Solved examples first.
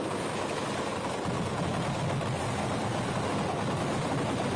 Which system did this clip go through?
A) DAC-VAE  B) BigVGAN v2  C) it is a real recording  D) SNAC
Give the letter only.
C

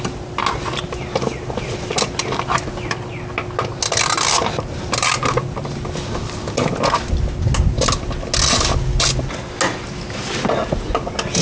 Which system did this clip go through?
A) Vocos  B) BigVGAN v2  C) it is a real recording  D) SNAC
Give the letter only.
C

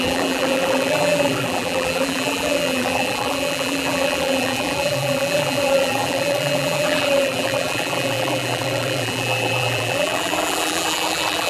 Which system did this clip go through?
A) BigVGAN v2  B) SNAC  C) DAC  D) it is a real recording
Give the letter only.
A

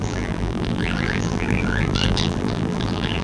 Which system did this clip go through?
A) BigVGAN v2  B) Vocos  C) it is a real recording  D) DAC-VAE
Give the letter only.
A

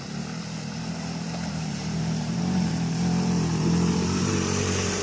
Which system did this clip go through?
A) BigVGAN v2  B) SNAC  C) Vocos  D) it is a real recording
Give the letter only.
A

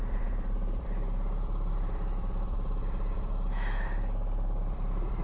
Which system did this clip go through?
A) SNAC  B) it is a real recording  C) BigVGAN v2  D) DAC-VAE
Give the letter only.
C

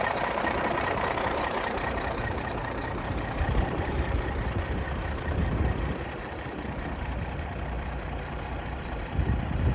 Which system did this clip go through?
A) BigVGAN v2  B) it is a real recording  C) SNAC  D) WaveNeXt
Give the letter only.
A